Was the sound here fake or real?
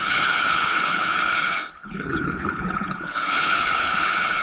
fake